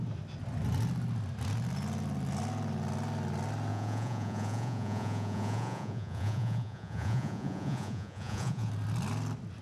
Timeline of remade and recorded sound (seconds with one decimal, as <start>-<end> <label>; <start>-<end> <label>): 0.0-3.7 recorded; 3.7-8.7 remade; 8.7-9.6 recorded